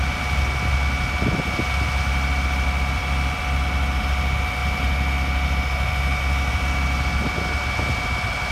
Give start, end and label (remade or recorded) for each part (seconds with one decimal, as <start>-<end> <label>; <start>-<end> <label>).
0.0-8.5 recorded